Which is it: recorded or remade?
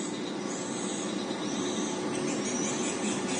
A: recorded